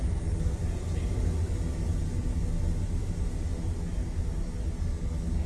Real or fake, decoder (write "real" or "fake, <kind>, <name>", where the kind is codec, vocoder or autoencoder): real